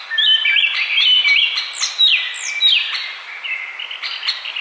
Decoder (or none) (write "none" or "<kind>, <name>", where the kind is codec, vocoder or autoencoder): none